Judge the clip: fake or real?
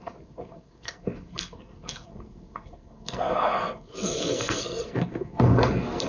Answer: fake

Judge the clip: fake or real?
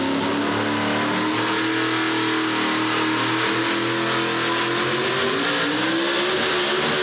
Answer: real